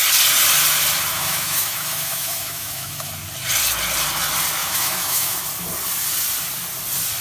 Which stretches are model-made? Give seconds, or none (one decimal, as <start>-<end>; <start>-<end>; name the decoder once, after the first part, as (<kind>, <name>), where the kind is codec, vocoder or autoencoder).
1.1-3.1 (autoencoder, DAC-VAE); 4.6-5.4